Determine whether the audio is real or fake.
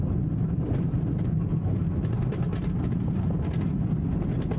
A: real